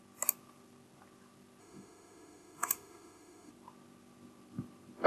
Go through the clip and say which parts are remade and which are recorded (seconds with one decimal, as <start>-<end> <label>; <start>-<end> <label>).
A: 0.0-1.6 recorded; 1.6-3.5 remade; 3.5-5.1 recorded